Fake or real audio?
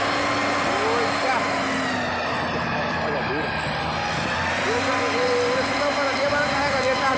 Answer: real